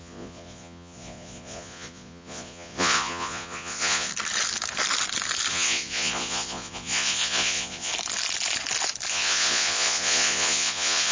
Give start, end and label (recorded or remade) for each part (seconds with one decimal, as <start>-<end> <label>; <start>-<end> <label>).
0.0-4.1 remade; 4.1-5.5 recorded; 5.5-7.9 remade; 7.9-9.1 recorded; 9.1-11.1 remade